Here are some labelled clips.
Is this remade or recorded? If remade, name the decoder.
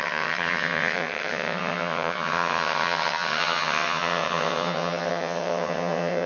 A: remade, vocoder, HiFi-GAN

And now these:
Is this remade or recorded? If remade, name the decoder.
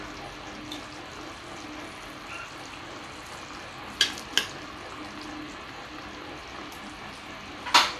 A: recorded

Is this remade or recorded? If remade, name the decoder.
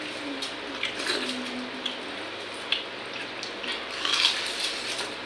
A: recorded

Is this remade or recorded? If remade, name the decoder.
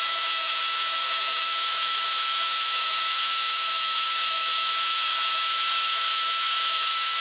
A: remade, autoencoder, DAC-VAE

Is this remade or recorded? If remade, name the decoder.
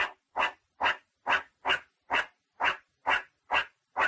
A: recorded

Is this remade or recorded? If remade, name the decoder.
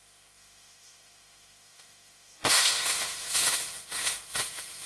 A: remade, autoencoder, DAC-VAE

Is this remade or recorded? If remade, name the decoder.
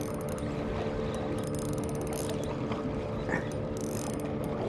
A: recorded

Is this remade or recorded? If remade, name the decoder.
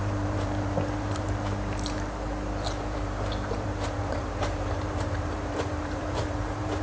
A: remade, vocoder, BigVGAN v2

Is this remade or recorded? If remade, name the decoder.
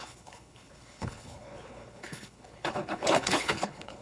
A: remade, codec, HILCodec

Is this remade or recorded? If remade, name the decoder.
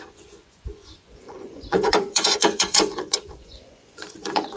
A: remade, vocoder, Vocos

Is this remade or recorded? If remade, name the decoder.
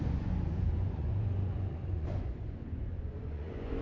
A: remade, vocoder, Vocos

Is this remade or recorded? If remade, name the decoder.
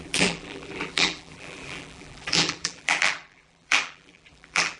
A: remade, vocoder, BigVGAN v2